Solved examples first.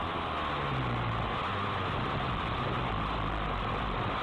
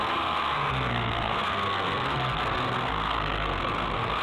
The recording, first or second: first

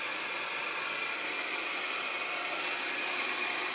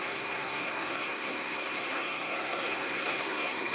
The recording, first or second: first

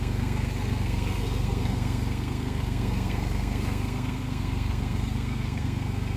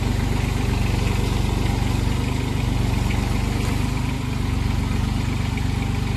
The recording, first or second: second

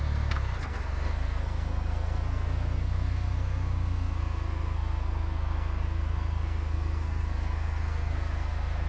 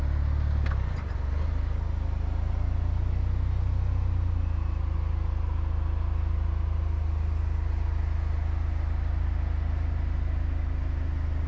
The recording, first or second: second